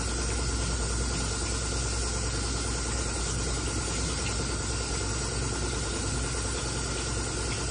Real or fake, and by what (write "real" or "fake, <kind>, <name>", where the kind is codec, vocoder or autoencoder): real